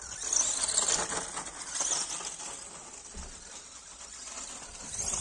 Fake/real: real